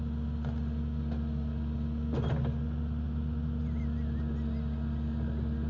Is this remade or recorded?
recorded